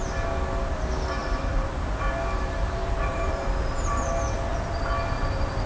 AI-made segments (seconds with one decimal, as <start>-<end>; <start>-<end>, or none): 1.2-1.8; 2.8-4.1